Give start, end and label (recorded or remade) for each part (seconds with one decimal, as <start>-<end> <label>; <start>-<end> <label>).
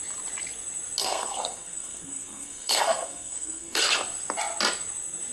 0.0-1.0 recorded; 1.0-3.8 remade; 3.8-5.3 recorded